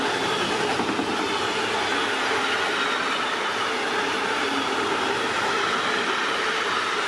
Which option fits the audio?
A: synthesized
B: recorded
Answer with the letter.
B